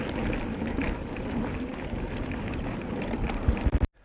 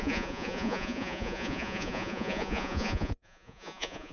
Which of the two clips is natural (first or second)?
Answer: first